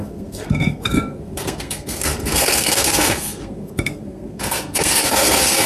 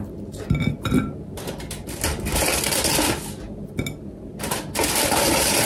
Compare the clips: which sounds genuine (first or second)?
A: second